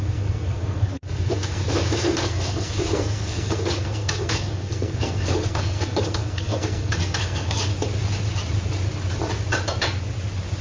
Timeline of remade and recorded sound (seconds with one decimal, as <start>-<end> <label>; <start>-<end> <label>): 0.0-7.7 remade; 7.7-10.6 recorded